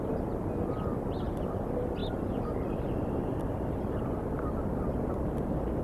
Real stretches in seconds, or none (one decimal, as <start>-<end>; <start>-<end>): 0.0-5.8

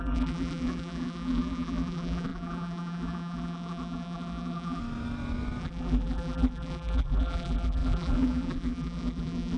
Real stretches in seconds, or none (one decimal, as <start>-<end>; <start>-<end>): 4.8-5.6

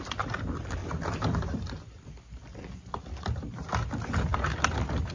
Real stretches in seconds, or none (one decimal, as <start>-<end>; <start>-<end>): 0.0-0.8; 3.9-5.1

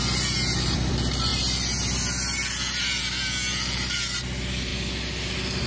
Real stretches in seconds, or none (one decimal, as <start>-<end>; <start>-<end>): 4.7-5.7

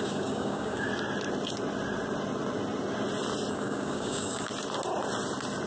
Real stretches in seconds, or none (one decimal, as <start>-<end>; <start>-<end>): 0.9-3.5; 4.5-5.7

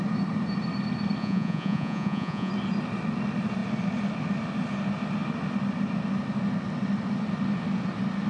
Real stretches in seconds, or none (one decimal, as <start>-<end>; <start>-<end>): 0.0-1.2; 2.5-8.3